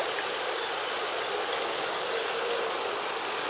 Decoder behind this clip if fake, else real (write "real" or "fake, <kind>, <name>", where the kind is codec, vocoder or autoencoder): real